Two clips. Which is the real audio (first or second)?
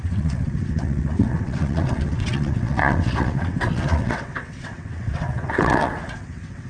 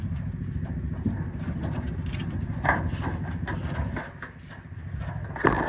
second